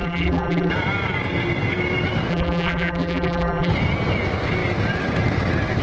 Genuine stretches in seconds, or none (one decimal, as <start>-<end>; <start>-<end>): 0.7-2.3; 3.7-5.8